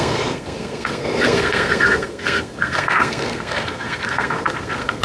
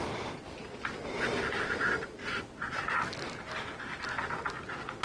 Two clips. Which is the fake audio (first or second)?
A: first